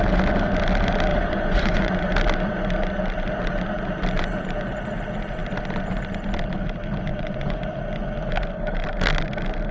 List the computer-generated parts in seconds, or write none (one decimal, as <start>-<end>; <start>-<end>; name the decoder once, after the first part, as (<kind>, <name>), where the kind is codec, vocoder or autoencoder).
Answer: 1.1-2.1 (vocoder, Vocos); 7.1-7.6